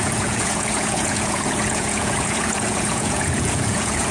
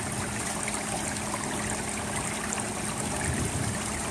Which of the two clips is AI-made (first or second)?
first